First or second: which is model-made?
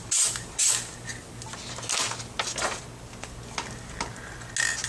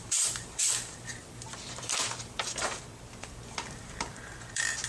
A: second